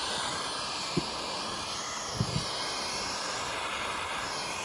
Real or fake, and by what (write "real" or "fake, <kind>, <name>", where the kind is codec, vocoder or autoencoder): real